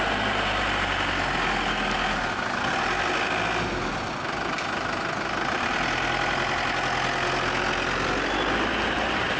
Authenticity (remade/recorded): recorded